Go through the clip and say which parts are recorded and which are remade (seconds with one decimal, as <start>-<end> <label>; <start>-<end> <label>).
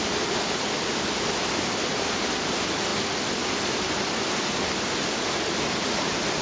0.0-6.4 recorded